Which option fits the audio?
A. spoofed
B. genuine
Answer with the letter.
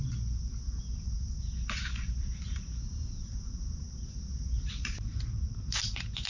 A